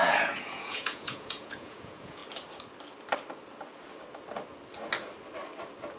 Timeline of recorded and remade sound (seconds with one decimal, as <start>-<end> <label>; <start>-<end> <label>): 0.0-2.2 remade; 2.2-6.0 recorded